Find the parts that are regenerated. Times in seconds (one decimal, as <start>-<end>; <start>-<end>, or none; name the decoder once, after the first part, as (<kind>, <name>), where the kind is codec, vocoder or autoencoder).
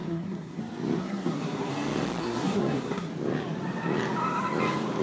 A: 0.0-0.6 (codec, SNAC); 1.0-1.7; 2.2-3.1